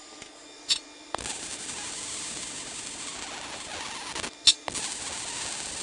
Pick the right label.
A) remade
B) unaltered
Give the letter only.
B